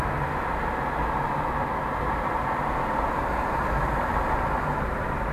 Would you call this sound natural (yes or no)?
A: yes